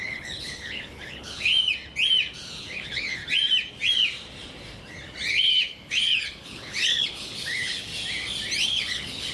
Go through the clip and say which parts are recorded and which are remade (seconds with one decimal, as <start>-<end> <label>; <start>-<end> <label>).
0.0-1.5 remade; 1.5-2.6 recorded; 2.6-3.2 remade; 3.2-5.3 recorded; 5.3-7.9 remade; 7.9-8.6 recorded; 8.6-9.3 remade